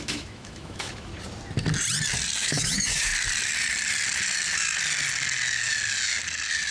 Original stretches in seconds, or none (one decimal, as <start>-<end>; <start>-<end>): 1.1-2.4; 3.1-6.7